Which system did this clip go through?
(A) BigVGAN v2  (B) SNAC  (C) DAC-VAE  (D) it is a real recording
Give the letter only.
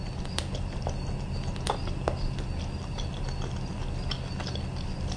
D